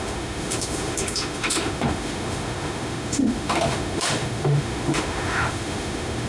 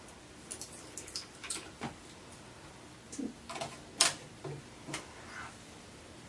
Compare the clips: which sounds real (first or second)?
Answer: second